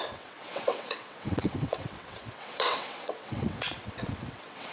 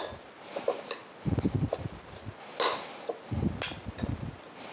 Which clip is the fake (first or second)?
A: first